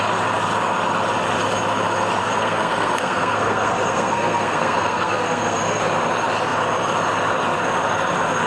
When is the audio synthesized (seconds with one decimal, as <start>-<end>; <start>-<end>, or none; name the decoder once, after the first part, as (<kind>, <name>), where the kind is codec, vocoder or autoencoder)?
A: 2.2-5.8 (codec, SNAC)